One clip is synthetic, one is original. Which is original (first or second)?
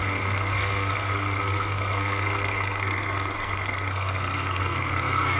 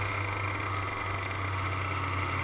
second